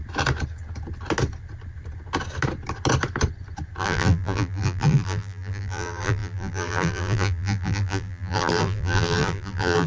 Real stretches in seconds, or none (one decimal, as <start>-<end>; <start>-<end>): 0.0-3.8